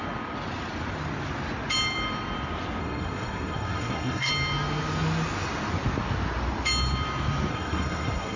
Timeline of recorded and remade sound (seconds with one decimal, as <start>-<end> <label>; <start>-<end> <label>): 0.0-2.8 recorded; 2.8-4.3 remade; 4.3-7.5 recorded; 7.5-8.4 remade